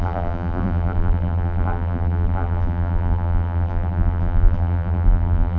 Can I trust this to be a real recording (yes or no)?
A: no